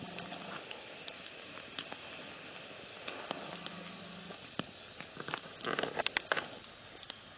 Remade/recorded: recorded